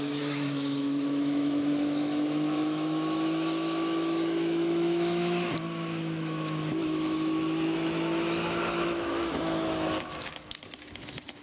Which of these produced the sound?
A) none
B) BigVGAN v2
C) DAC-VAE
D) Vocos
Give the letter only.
C